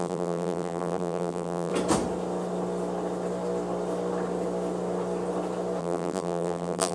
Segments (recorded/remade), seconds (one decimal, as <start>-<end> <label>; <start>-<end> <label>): 0.0-1.7 remade; 1.7-5.8 recorded; 5.8-6.9 remade